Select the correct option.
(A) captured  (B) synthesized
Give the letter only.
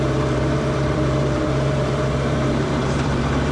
B